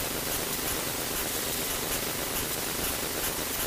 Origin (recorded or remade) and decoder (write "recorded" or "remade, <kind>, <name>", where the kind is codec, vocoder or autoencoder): recorded